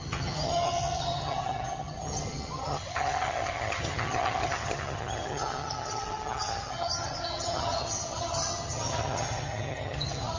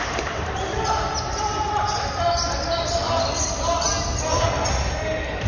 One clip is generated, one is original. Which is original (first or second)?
second